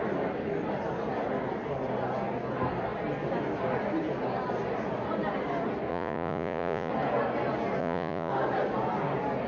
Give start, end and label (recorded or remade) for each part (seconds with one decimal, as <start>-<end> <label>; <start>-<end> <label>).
0.0-5.9 recorded; 5.9-6.9 remade; 6.9-7.8 recorded; 7.8-8.3 remade; 8.3-9.5 recorded